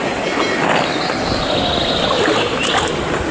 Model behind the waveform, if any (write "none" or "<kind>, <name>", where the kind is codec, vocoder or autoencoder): none